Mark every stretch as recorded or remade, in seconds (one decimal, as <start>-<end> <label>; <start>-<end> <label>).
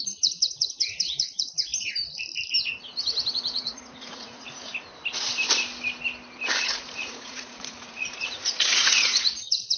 0.0-1.7 remade; 1.7-3.3 recorded; 3.3-4.7 remade; 4.7-6.6 recorded; 6.6-9.8 remade